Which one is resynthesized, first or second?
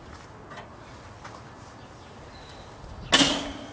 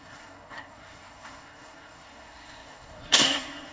second